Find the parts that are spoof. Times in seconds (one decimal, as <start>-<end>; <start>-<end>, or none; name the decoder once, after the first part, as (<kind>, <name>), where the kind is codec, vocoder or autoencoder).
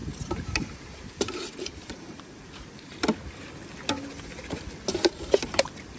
0.0-2.9 (vocoder, BigVGAN v2); 5.2-6.0